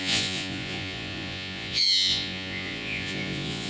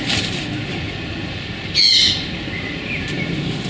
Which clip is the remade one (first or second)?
first